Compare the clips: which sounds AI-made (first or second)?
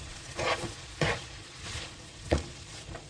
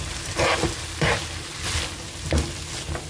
first